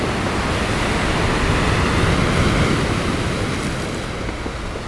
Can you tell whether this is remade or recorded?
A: recorded